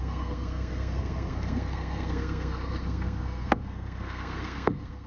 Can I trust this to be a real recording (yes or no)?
no